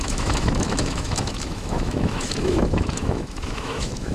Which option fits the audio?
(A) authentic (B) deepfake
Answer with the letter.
B